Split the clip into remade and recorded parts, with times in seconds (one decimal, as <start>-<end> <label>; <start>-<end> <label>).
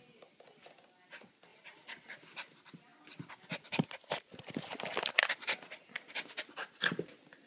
0.0-7.5 recorded